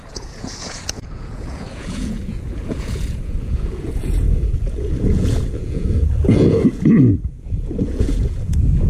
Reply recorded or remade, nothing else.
remade